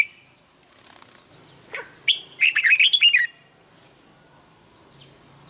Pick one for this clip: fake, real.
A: real